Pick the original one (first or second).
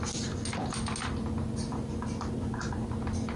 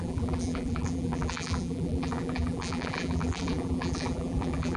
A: first